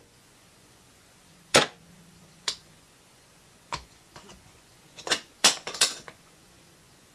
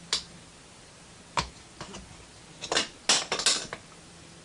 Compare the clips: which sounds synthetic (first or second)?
first